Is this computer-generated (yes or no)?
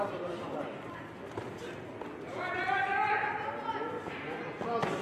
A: no